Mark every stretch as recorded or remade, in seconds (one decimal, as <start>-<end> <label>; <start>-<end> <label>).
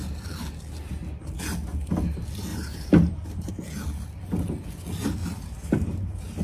0.0-2.5 recorded; 2.5-3.5 remade; 3.5-5.2 recorded; 5.2-6.4 remade